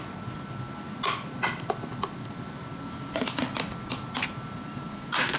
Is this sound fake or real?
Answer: real